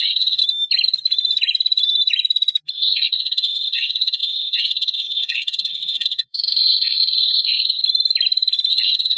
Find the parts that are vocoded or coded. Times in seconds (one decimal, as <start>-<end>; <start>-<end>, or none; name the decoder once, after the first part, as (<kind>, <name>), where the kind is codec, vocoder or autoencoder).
0.0-0.4 (codec, SNAC); 2.7-7.8; 8.7-9.2